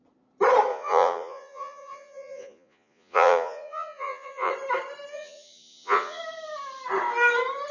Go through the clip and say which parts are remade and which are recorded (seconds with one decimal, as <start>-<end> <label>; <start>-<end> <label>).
0.0-0.7 recorded; 0.7-4.5 remade; 4.5-5.1 recorded; 5.1-6.2 remade; 6.2-7.7 recorded